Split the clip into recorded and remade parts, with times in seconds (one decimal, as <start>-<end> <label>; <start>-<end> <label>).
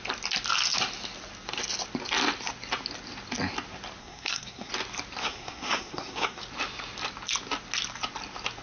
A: 0.0-4.0 recorded; 4.0-4.7 remade; 4.7-5.2 recorded; 5.2-6.4 remade; 6.4-8.6 recorded